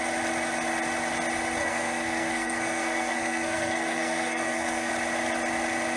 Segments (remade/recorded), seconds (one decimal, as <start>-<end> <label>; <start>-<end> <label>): 0.0-1.6 recorded; 1.6-4.9 remade; 4.9-6.0 recorded